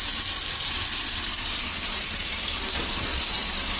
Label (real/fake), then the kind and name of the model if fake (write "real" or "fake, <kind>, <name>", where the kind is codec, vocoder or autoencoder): fake, vocoder, BigVGAN v2